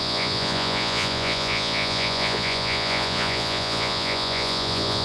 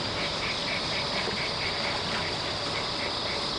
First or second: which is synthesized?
first